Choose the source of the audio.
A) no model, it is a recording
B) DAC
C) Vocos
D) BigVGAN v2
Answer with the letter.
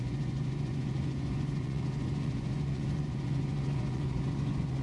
C